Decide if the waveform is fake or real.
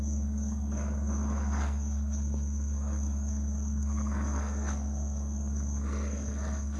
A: fake